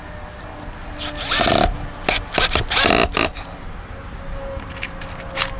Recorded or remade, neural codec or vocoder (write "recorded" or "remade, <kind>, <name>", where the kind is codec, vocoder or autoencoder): recorded